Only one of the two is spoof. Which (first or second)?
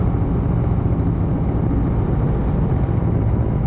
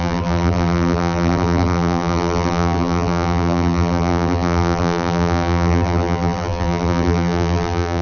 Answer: second